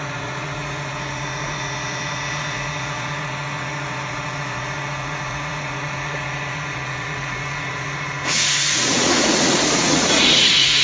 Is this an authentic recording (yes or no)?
no